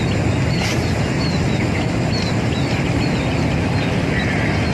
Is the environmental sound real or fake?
real